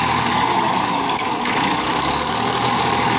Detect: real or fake fake